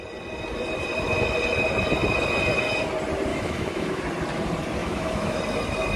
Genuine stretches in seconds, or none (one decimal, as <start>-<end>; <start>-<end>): 0.0-3.3; 4.0-4.8; 5.4-6.0